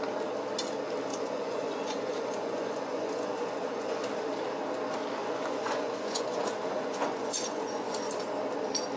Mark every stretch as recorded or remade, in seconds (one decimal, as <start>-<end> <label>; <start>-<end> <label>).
0.0-1.1 recorded; 1.1-4.0 remade; 4.0-5.2 recorded; 5.2-8.1 remade; 8.1-9.0 recorded